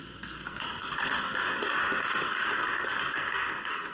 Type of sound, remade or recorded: remade